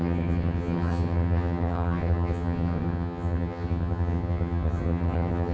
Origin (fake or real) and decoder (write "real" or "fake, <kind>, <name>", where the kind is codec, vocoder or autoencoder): fake, vocoder, HiFi-GAN